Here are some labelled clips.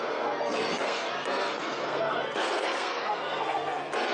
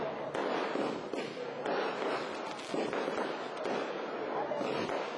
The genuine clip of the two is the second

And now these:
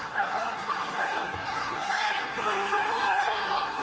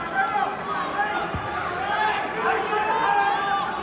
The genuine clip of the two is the second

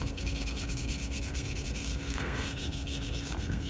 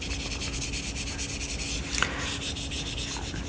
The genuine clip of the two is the second